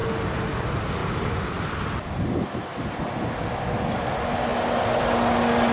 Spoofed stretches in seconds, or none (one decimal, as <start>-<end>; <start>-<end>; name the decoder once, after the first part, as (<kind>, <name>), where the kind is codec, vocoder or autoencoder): none